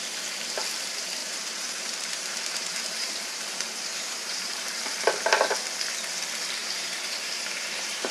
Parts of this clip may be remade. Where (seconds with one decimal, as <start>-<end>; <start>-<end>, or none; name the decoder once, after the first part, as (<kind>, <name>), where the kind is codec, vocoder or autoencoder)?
1.2-4.8 (vocoder, BigVGAN v2); 6.6-8.1